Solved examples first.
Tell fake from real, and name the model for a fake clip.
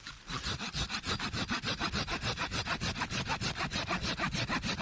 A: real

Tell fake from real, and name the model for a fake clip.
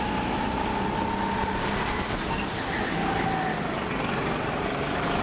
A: real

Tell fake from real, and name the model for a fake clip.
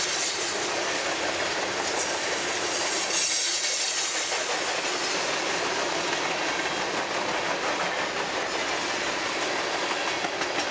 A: real